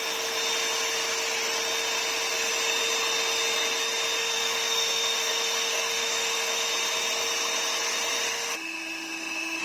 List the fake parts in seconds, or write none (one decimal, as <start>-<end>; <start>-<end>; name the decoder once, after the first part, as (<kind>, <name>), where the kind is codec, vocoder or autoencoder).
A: 4.2-6.7 (autoencoder, DAC-VAE); 8.3-9.6